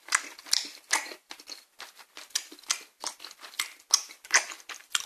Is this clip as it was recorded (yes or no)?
yes